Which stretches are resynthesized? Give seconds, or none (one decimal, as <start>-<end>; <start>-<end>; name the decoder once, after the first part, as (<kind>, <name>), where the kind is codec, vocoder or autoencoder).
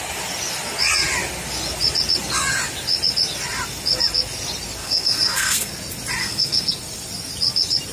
4.8-5.7 (codec, SNAC); 6.2-6.7